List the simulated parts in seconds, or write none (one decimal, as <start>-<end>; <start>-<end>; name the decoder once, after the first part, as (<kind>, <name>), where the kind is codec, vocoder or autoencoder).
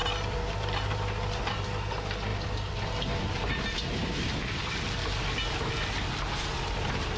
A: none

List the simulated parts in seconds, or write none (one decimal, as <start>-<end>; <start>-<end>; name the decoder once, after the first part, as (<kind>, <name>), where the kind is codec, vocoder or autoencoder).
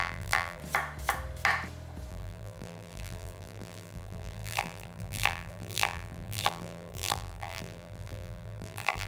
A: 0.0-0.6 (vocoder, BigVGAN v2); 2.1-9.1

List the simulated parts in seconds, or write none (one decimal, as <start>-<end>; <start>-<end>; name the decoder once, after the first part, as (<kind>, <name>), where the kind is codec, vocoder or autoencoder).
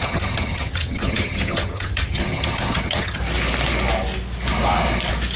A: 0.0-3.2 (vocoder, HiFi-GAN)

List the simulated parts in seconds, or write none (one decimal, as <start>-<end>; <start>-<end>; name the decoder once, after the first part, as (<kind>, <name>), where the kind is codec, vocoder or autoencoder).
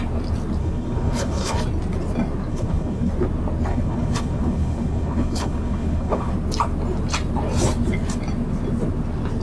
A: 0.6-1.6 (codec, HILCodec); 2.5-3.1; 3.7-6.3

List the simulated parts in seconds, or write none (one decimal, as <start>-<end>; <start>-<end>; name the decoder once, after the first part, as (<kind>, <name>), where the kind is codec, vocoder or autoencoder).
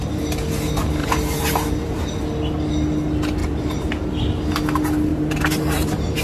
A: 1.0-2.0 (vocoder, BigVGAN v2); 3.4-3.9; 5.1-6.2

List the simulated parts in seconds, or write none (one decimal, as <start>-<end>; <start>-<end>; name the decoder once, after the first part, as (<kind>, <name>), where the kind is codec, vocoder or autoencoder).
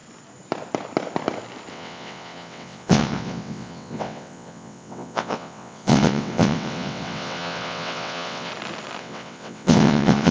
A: 1.7-8.5 (vocoder, WaveNeXt); 9.0-10.3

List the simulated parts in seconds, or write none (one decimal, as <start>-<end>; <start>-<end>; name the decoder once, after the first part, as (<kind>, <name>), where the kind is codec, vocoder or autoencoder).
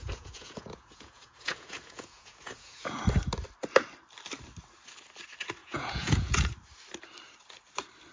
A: 0.0-3.0 (vocoder, Vocos); 5.6-6.5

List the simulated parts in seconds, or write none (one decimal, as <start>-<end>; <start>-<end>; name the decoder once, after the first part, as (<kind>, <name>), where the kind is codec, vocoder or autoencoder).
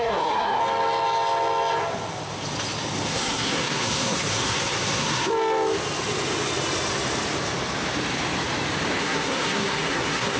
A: 0.0-0.6 (codec, SNAC); 3.1-5.3; 9.0-10.4